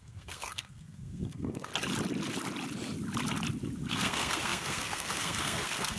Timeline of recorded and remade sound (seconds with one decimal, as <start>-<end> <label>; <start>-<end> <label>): 0.0-1.7 remade; 1.7-3.9 recorded; 3.9-6.0 remade